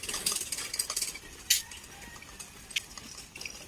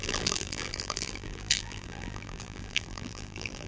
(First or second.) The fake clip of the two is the second